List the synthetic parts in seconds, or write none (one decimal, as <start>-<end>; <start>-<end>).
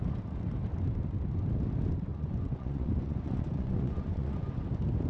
2.1-4.5